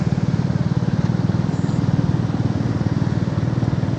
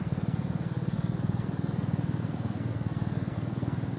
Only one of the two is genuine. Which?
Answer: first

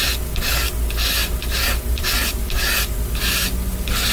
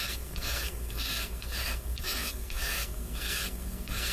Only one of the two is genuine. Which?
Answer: first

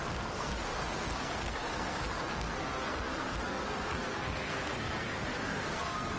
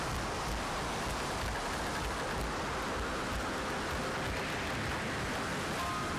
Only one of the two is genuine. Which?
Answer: second